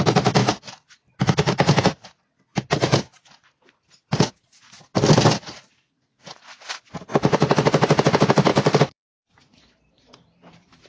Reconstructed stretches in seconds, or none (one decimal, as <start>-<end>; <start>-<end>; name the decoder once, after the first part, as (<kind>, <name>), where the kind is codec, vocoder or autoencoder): 8.5-10.9 (vocoder, BigVGAN v2)